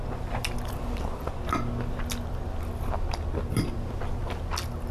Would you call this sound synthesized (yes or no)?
no